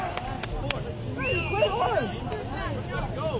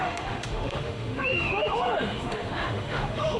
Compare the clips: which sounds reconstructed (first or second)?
second